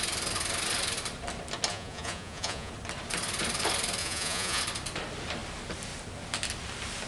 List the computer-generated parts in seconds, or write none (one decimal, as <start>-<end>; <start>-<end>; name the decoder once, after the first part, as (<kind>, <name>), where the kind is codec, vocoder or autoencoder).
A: 1.7-2.7 (vocoder, Vocos); 4.0-4.6